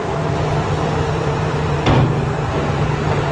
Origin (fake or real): fake